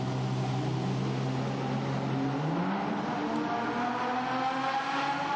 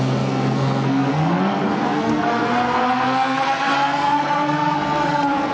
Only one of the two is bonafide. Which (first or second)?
first